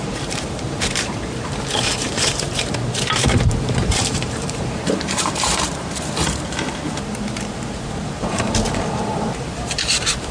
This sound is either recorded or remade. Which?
remade